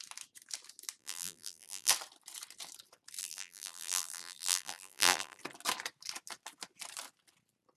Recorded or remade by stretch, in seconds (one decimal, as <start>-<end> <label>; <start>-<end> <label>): 0.0-1.0 recorded; 1.0-1.9 remade; 1.9-3.2 recorded; 3.2-5.4 remade; 5.4-7.8 recorded